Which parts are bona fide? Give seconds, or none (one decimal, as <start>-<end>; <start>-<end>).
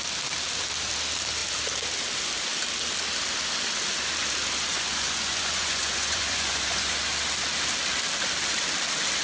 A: 0.0-4.7; 7.0-9.2